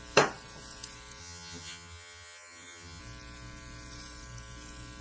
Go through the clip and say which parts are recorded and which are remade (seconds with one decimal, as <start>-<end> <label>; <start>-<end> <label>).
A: 0.0-1.2 recorded; 1.2-3.0 remade; 3.0-5.0 recorded